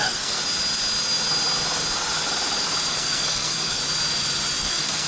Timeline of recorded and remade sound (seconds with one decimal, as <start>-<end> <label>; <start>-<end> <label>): 0.0-0.4 remade; 0.4-2.9 recorded; 2.9-3.8 remade; 3.8-4.6 recorded; 4.6-5.1 remade